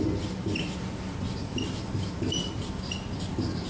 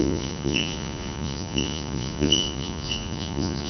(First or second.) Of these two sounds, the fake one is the second